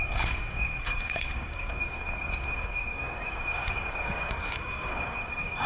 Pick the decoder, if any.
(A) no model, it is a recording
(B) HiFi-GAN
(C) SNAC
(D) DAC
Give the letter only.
D